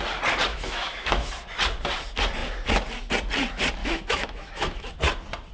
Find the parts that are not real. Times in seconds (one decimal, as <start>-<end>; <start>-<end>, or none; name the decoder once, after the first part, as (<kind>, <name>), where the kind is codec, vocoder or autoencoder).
0.5-1.3 (autoencoder, DAC-VAE); 3.8-4.9